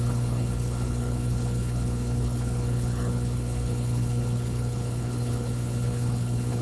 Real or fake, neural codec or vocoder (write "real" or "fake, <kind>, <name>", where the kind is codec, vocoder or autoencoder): fake, codec, HILCodec